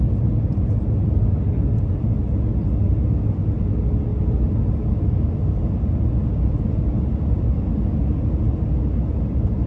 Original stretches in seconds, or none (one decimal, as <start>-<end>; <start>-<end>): 0.0-9.7

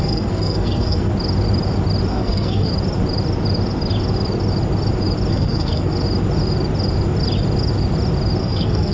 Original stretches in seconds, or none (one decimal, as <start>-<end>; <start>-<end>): 1.1-2.1; 2.7-5.3; 5.9-8.4

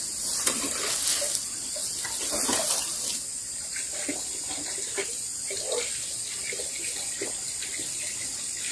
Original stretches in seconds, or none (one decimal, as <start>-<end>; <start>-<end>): 0.0-8.7

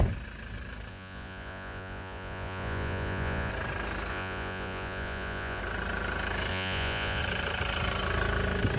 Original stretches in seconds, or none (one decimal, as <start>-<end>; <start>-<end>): 0.0-0.9; 3.5-4.1; 5.6-6.5; 7.2-8.8

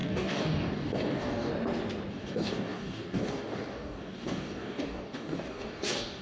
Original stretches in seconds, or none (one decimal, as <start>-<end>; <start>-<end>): 1.5-2.1

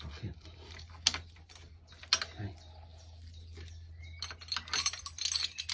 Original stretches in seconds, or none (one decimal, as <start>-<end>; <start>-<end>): 0.0-5.7

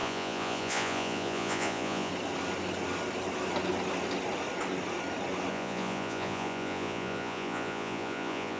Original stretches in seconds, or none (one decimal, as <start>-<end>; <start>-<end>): 2.1-5.5